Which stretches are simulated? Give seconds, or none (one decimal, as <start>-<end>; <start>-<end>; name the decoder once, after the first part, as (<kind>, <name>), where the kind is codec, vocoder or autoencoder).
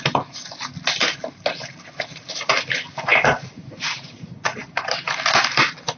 none